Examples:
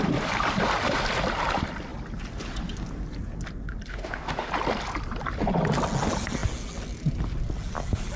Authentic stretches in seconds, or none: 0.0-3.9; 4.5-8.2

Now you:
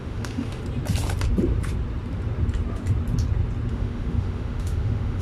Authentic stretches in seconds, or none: 0.6-3.7

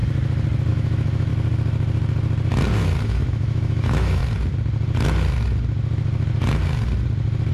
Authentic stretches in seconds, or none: 0.0-0.7; 1.3-3.0; 4.2-7.5

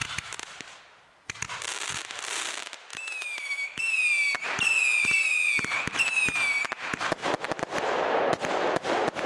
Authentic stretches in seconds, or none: 0.0-2.9; 3.8-9.3

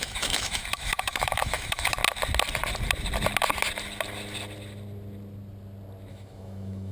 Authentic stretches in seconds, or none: 2.0-6.1

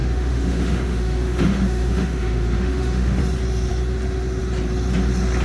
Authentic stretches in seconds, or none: 3.2-5.4

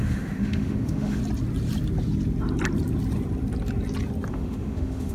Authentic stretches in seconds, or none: 1.2-4.3

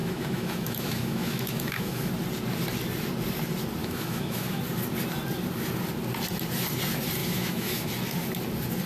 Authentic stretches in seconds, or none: 2.1-3.8; 4.6-7.2; 7.9-8.9